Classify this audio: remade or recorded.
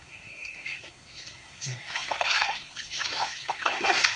remade